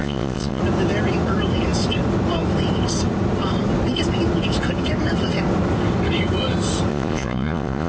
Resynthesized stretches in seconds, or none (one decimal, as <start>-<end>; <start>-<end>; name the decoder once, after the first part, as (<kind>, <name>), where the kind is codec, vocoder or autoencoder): 0.0-0.6 (vocoder, Vocos); 6.9-7.9